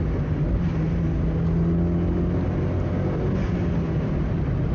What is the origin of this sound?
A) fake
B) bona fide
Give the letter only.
B